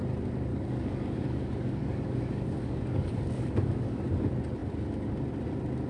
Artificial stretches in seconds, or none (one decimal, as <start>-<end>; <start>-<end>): 0.5-4.0